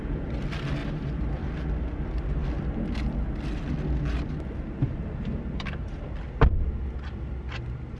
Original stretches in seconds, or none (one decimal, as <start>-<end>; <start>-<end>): 0.0-0.8; 1.4-8.0